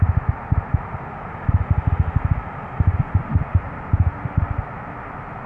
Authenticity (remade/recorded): recorded